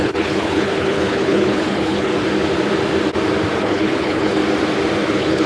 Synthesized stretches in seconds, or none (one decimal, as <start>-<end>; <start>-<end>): 0.0-2.1; 3.6-4.4; 5.1-5.5